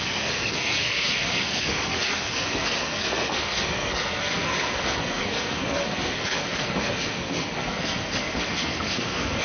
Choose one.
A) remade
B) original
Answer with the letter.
A